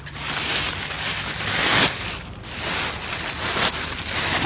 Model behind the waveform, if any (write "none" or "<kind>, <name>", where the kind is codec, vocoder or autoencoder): none